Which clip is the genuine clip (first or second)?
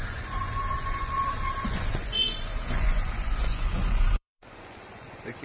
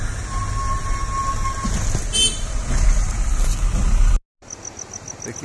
second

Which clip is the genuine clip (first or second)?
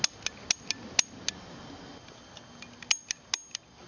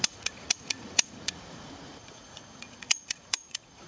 first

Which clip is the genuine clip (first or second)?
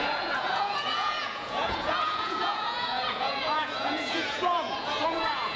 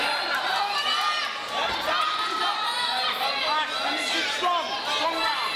second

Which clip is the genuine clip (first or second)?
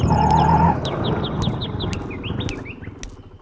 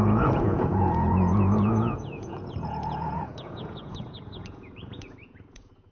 first